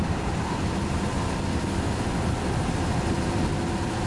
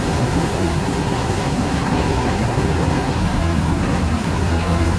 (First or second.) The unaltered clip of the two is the first